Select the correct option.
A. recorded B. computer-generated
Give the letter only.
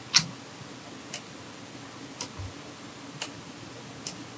A